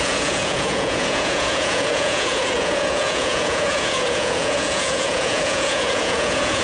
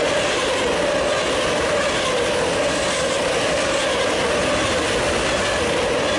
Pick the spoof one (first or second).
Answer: first